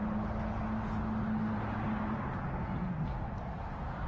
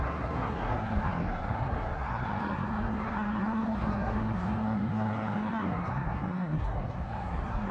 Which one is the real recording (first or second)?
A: first